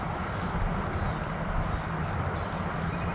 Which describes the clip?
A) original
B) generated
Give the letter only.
A